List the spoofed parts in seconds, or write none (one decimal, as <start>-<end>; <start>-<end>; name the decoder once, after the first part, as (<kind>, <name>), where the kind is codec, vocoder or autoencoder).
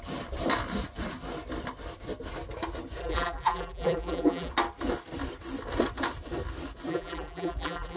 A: 3.0-4.5 (vocoder, BigVGAN v2); 6.9-8.0